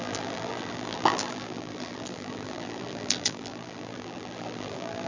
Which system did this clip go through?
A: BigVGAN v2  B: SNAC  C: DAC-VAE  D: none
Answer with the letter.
A